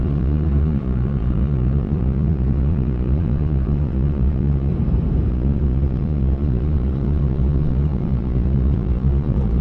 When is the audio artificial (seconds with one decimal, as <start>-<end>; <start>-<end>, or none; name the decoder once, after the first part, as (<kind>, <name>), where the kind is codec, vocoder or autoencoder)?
0.0-4.7 (vocoder, Vocos); 5.3-9.6